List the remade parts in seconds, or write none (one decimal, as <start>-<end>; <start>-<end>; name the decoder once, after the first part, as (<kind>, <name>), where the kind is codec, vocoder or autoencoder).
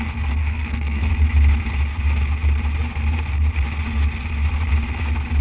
0.4-1.1 (codec, SNAC)